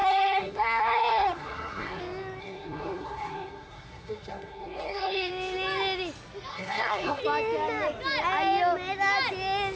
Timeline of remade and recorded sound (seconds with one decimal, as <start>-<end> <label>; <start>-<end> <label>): 0.0-2.0 remade; 2.0-2.4 recorded; 2.4-5.3 remade; 5.3-6.5 recorded; 6.5-7.2 remade; 7.2-9.8 recorded